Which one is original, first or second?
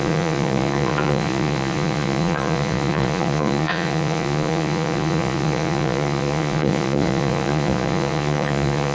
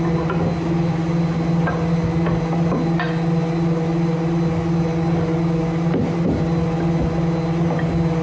second